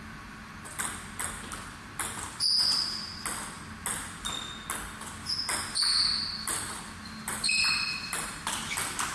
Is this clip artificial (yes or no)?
no